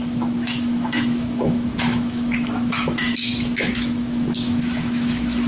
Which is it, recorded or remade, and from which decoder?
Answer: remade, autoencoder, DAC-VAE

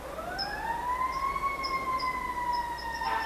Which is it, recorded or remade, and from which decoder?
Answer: recorded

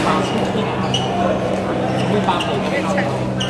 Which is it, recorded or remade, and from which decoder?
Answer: recorded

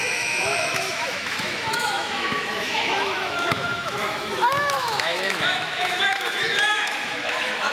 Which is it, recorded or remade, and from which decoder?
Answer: remade, autoencoder, DAC-VAE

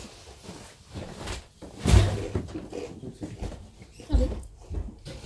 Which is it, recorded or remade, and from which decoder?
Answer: recorded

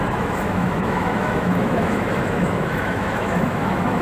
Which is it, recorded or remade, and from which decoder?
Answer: remade, autoencoder, DAC-VAE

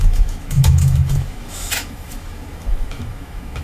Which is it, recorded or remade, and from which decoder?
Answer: remade, autoencoder, DAC-VAE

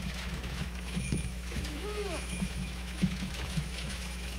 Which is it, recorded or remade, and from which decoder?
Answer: remade, autoencoder, DAC-VAE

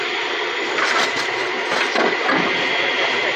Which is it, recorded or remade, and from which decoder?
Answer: recorded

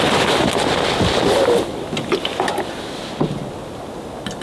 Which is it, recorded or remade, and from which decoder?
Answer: recorded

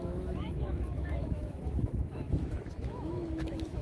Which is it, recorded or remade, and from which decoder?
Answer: remade, autoencoder, DAC-VAE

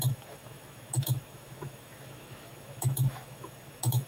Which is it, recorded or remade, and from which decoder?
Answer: remade, autoencoder, DAC-VAE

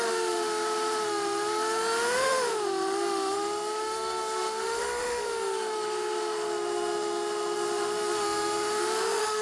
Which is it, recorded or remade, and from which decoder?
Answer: remade, autoencoder, DAC-VAE